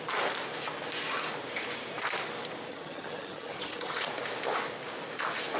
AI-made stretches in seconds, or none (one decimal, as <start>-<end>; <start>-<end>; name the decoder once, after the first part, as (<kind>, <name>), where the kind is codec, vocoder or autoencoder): 2.7-4.1 (vocoder, HiFi-GAN)